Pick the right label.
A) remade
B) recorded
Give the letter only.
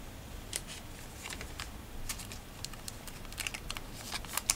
A